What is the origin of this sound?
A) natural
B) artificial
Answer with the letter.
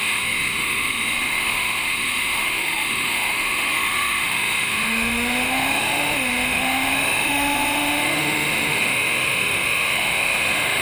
B